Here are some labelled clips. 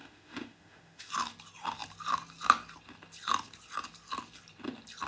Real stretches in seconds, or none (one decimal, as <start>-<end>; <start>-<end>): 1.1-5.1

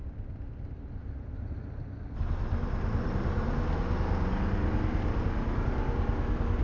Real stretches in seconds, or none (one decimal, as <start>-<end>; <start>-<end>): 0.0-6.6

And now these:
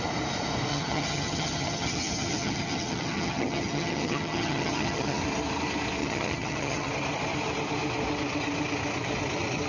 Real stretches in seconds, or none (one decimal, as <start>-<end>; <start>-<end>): 0.0-0.7; 5.2-6.0; 6.9-9.7